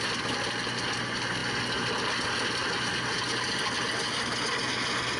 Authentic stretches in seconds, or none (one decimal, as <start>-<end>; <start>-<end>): 0.0-5.2